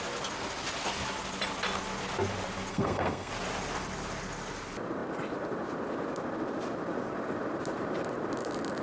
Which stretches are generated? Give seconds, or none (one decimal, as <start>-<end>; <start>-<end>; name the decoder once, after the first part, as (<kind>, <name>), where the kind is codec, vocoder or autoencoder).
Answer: 2.7-3.3 (codec, SNAC)